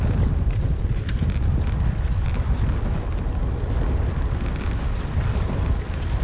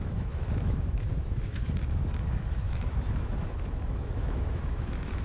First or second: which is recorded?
first